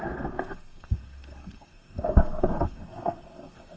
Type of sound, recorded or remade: remade